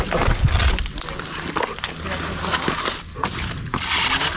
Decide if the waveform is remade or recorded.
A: recorded